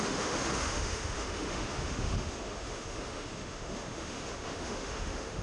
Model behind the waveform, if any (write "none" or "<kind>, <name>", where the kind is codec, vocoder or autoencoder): autoencoder, DAC-VAE